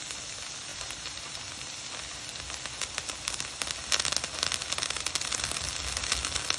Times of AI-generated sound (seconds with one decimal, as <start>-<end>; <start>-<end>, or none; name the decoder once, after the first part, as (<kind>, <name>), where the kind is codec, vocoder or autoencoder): 0.7-1.2 (vocoder, BigVGAN v2)